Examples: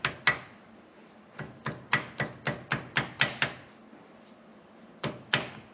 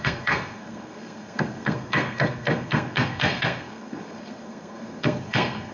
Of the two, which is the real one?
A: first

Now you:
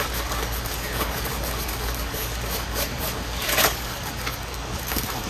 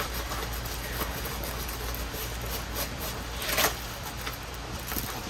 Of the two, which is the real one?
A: second